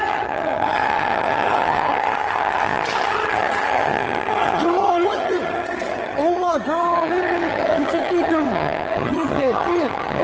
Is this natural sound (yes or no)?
no